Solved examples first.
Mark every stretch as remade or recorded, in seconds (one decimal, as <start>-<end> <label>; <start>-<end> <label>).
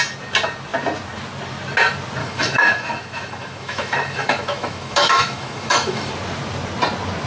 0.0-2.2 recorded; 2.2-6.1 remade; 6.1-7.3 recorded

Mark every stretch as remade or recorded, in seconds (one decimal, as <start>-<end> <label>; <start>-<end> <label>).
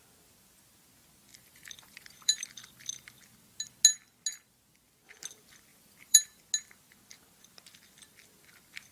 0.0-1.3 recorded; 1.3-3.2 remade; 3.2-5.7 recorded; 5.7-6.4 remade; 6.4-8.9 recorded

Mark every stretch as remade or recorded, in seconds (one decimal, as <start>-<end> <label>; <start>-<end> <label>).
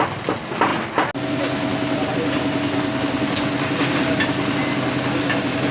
0.0-5.7 recorded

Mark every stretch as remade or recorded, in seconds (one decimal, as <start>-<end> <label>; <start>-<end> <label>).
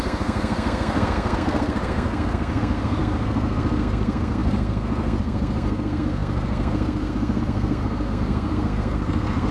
0.0-9.5 remade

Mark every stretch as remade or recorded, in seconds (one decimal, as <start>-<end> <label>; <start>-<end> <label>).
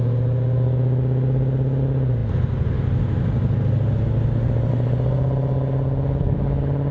0.0-6.9 recorded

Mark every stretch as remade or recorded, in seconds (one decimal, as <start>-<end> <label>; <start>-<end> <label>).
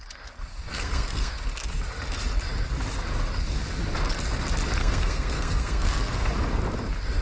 0.0-0.7 recorded; 0.7-1.3 remade; 1.3-4.8 recorded; 4.8-6.3 remade; 6.3-7.2 recorded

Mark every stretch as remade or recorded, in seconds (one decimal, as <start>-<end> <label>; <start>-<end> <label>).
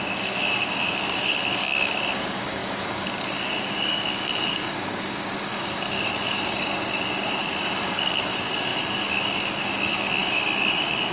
0.0-11.1 remade